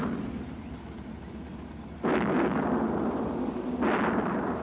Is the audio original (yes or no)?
yes